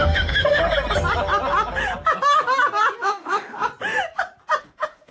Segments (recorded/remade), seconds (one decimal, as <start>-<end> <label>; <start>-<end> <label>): 0.0-0.6 remade; 0.6-3.0 recorded; 3.0-3.7 remade; 3.7-4.6 recorded; 4.6-5.1 remade